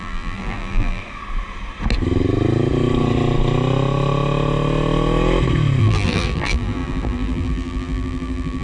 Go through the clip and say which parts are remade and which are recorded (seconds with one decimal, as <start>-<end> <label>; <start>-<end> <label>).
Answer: 0.0-1.0 remade; 1.0-5.8 recorded; 5.8-8.6 remade